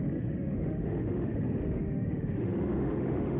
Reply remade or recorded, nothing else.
remade